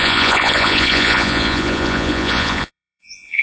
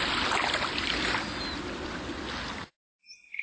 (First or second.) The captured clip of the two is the second